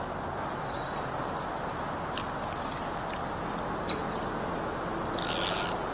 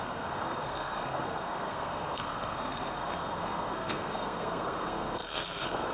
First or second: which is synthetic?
second